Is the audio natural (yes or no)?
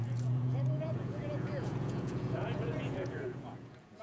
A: no